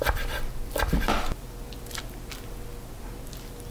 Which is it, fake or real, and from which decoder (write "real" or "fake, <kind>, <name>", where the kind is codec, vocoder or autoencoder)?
real